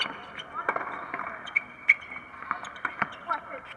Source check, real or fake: real